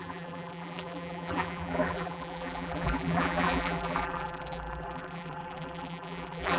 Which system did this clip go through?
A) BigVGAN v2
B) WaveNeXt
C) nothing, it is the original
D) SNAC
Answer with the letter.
A